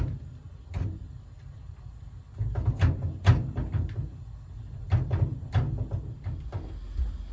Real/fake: real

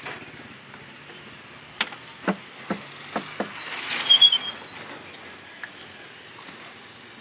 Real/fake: real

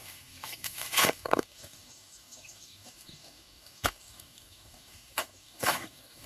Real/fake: fake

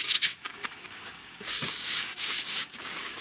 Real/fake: fake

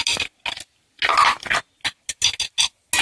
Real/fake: real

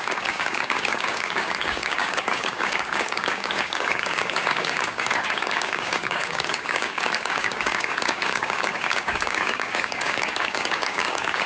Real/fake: fake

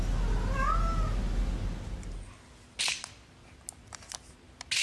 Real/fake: real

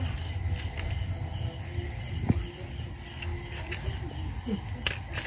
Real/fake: real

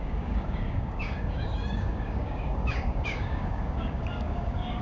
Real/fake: fake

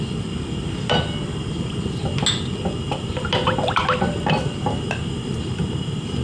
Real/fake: real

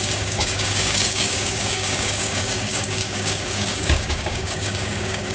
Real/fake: fake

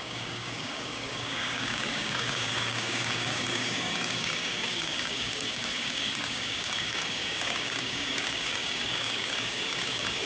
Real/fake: fake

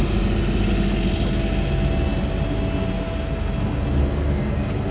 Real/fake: real